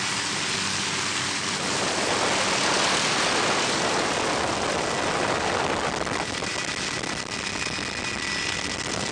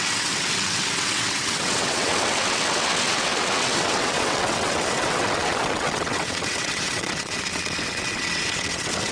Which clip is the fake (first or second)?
second